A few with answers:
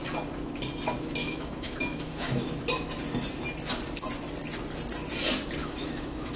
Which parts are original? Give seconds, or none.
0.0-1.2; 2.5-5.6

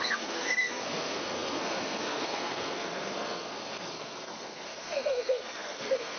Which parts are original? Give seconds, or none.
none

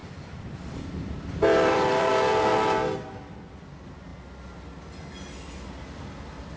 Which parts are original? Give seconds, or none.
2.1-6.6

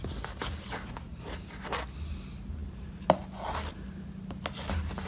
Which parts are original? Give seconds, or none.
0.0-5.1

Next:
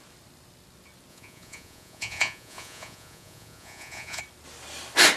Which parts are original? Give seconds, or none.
0.0-1.1; 4.2-5.2

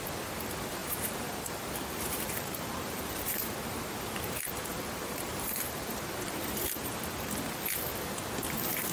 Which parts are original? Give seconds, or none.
0.0-0.8; 4.0-4.7; 7.0-8.9

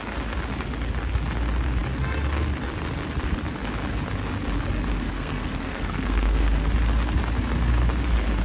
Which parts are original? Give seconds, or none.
0.0-4.9; 6.7-8.4